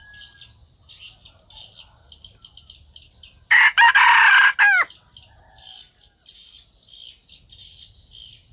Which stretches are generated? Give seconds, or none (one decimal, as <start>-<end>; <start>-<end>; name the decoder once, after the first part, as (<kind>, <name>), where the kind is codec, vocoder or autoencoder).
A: none